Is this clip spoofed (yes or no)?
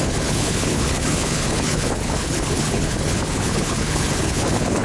yes